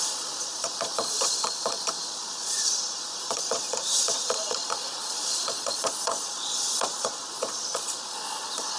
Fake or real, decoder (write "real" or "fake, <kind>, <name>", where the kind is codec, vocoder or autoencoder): fake, vocoder, Vocos